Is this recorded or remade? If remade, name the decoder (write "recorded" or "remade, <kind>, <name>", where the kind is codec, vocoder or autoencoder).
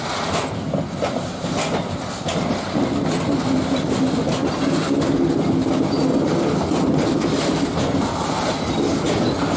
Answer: recorded